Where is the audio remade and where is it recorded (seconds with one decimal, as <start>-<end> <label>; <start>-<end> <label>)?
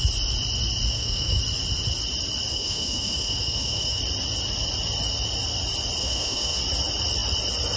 0.0-0.9 recorded; 0.9-1.4 remade; 1.4-2.5 recorded; 2.5-4.0 remade; 4.0-6.0 recorded; 6.0-6.6 remade; 6.6-7.8 recorded